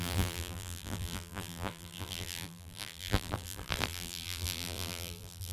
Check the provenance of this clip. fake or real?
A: fake